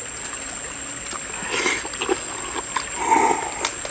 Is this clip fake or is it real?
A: real